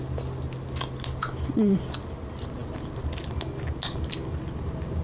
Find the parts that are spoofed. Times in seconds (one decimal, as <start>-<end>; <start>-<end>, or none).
none